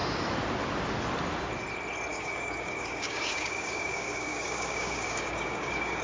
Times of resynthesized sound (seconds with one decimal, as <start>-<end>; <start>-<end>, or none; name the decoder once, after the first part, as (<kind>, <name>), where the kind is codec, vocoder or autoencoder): 2.1-6.0 (codec, DAC)